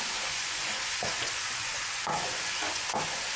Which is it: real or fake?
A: fake